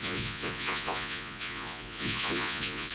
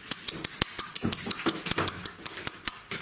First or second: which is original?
second